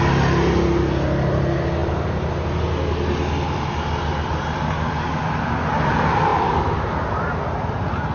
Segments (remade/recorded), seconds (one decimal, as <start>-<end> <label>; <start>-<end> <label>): 0.0-8.1 recorded